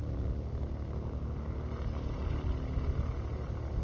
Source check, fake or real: real